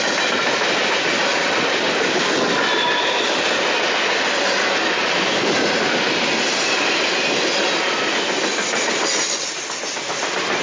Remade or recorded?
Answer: recorded